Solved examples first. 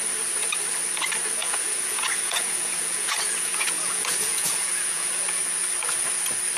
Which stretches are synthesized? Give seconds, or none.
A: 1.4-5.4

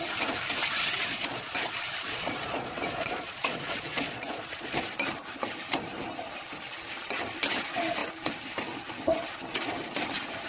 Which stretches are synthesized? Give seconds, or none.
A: 0.6-4.8

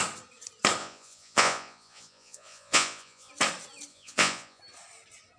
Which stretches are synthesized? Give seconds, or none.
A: 0.8-3.3; 3.9-4.6

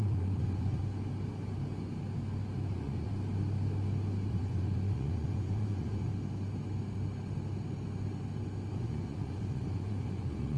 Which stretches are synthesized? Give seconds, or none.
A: 0.0-0.8; 2.7-3.1; 4.3-6.1; 8.7-10.6